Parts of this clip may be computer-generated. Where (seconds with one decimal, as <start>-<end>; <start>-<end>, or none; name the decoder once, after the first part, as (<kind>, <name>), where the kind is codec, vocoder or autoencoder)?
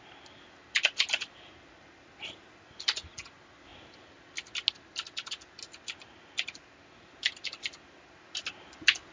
none